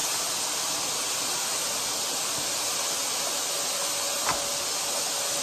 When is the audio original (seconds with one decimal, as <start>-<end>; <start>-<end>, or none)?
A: 0.0-5.4